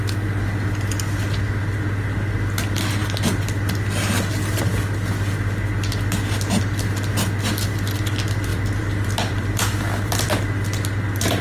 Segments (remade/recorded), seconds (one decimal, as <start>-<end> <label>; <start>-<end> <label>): 0.0-8.5 recorded; 8.5-10.4 remade; 10.4-11.4 recorded